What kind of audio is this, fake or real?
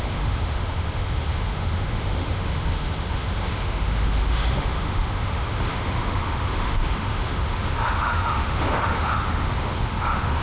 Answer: fake